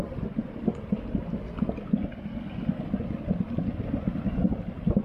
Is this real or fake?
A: real